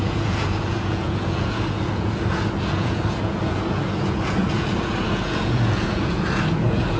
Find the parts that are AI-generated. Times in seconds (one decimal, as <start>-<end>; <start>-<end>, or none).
0.0-7.0